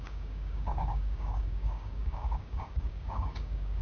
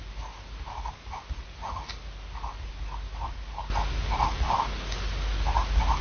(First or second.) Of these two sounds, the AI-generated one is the first